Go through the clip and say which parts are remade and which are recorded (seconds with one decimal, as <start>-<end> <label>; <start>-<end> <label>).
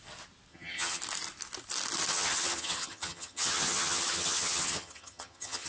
0.0-0.5 recorded; 0.5-1.0 remade; 1.0-2.1 recorded; 2.1-5.7 remade